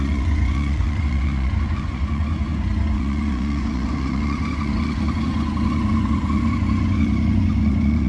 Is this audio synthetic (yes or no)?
yes